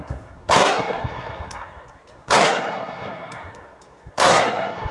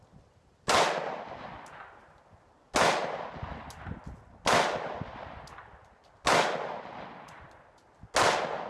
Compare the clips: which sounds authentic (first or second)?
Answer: second